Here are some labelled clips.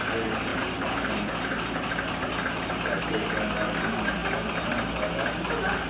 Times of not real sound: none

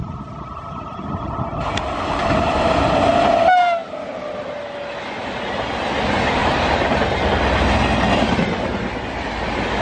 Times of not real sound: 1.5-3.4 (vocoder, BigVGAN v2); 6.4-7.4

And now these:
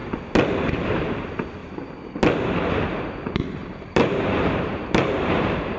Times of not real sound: 1.1-1.6 (vocoder, BigVGAN v2); 3.0-5.8

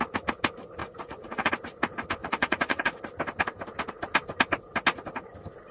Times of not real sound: 0.8-1.5 (vocoder, Vocos); 2.2-3.0

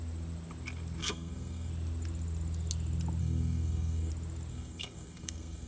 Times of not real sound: 1.0-1.7 (codec, SNAC); 3.2-4.1; 4.5-5.7